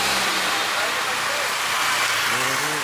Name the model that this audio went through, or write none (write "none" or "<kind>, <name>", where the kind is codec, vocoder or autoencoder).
none